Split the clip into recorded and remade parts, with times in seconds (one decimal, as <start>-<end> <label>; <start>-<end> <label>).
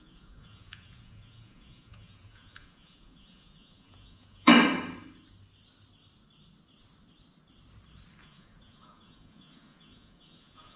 0.0-4.5 remade; 4.5-8.2 recorded; 8.2-10.8 remade